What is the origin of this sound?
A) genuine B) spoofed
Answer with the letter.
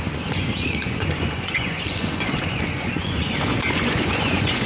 B